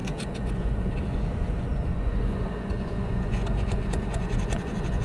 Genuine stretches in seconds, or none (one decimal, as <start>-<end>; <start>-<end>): none